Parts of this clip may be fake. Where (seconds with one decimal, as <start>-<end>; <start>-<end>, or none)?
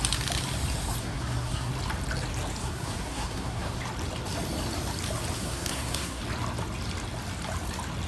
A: 1.0-1.7; 2.6-3.8; 5.4-6.2